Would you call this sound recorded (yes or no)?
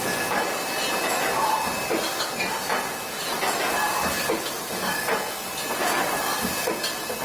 yes